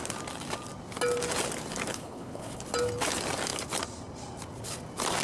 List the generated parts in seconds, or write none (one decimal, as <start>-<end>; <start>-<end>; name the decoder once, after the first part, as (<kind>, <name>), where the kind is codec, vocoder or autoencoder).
1.9-2.6 (codec, HILCodec)